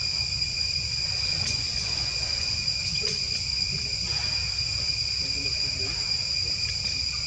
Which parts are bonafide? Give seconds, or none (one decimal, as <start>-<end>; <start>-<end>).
0.0-0.4; 3.8-7.3